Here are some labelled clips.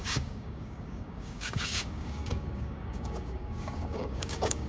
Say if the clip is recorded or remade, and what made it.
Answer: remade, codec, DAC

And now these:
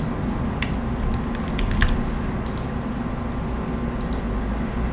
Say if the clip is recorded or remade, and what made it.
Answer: recorded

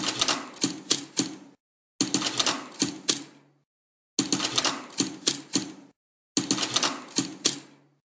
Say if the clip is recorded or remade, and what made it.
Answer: recorded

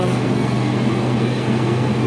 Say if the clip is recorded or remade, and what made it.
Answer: remade, codec, SNAC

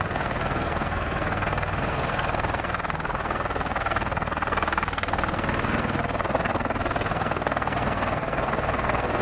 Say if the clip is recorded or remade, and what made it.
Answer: remade, codec, SNAC